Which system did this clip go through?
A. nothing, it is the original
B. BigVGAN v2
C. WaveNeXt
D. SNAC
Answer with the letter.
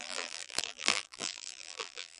B